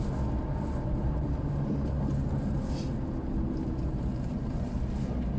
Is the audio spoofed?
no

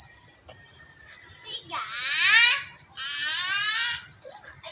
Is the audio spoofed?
no